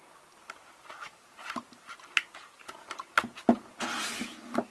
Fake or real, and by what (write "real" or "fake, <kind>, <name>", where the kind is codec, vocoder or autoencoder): real